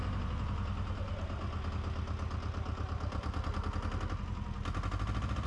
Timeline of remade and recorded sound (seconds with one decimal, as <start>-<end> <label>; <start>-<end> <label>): 0.0-5.5 recorded